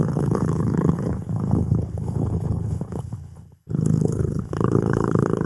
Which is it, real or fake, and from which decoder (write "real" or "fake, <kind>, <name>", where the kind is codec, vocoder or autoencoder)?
fake, codec, HILCodec